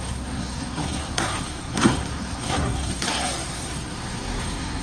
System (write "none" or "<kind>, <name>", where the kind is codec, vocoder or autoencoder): codec, SNAC